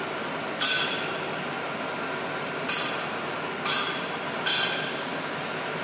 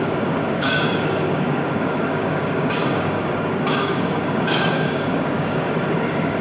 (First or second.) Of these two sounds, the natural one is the first